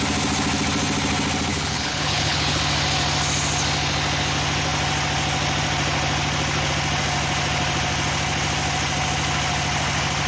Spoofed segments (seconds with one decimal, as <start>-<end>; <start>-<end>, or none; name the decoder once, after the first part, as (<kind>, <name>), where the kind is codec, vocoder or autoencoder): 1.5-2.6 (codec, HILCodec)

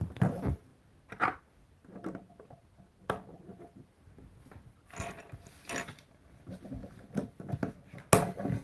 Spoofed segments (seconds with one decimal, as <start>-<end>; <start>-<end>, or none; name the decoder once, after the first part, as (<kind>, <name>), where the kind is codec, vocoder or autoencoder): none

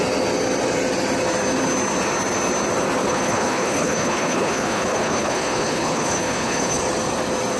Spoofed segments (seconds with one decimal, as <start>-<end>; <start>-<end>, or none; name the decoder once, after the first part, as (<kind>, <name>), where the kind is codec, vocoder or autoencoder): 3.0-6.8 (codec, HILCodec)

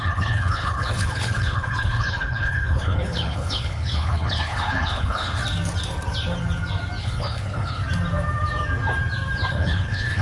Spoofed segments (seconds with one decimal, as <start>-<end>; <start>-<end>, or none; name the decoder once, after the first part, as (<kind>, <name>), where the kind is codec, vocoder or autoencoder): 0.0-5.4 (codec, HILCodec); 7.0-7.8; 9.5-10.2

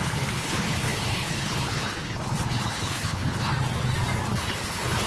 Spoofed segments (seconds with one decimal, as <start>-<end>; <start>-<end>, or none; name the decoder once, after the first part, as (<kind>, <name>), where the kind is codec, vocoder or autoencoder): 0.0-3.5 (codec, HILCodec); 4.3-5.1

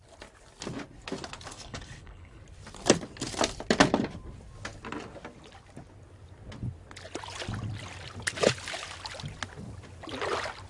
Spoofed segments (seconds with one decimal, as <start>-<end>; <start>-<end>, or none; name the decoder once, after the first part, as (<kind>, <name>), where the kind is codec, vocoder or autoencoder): 1.5-2.4 (codec, HILCodec)